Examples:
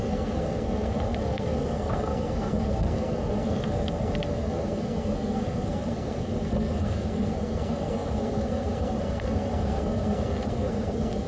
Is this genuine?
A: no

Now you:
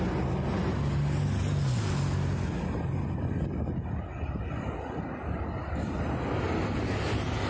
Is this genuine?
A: yes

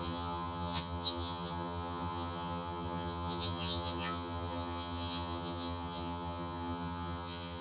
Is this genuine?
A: no